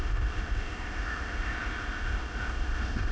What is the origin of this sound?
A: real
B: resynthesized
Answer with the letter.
B